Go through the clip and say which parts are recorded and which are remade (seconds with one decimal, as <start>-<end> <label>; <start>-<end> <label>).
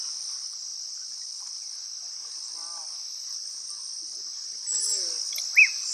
0.0-5.9 recorded